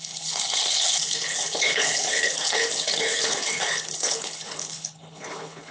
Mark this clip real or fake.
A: fake